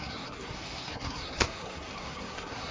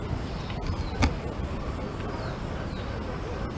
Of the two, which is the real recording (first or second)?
second